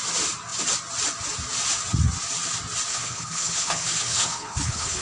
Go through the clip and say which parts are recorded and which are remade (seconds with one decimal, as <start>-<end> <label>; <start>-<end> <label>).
0.0-2.9 recorded; 2.9-5.0 remade